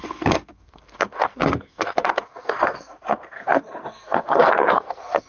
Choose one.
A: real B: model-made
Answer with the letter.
B